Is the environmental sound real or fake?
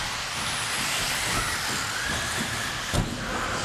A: real